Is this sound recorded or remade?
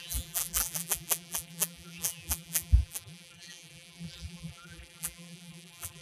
remade